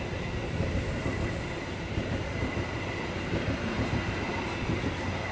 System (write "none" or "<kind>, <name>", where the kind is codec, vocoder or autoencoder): none